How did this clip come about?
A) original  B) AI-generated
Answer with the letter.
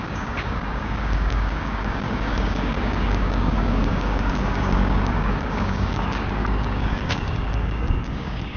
B